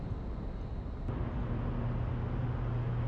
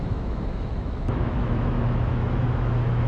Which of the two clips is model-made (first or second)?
second